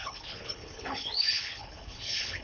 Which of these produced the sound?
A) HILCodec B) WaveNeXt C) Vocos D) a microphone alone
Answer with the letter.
A